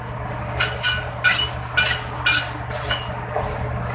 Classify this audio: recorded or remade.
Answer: recorded